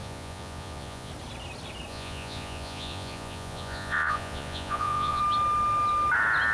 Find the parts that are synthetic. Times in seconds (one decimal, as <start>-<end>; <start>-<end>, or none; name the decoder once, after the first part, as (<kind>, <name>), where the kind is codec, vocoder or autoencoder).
0.0-1.1 (vocoder, Vocos); 1.9-5.2